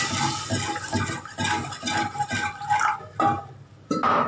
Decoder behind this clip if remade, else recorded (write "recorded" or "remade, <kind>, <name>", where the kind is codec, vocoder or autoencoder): recorded